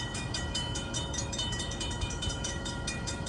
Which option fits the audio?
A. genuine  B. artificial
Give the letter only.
B